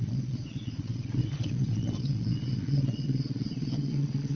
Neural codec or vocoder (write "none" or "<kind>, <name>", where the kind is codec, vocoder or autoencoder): vocoder, Vocos